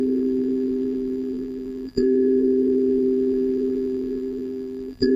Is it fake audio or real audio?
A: fake